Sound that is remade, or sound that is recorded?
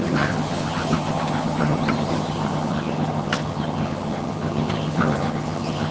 remade